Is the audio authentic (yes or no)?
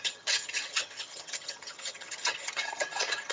no